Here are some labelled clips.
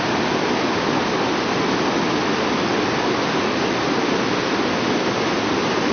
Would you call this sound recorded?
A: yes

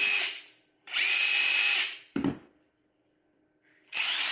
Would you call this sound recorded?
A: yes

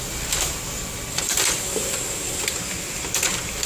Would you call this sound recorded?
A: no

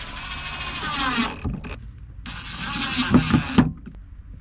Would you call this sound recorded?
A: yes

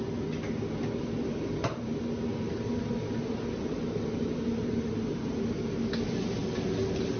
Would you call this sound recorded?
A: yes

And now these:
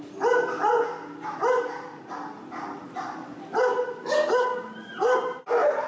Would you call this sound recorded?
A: no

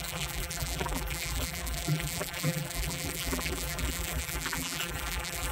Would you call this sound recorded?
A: no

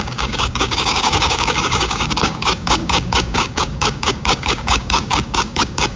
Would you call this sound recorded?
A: no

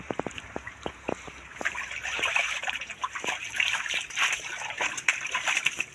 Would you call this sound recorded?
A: no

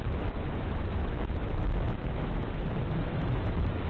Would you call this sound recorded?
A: no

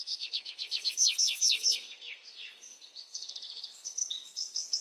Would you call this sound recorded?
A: no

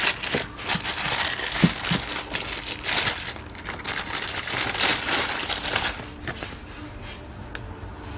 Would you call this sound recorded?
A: yes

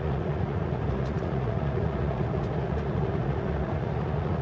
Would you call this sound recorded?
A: no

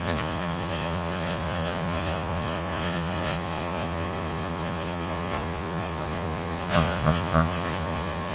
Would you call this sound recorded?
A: no